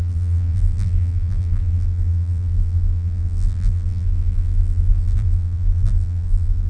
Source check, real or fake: fake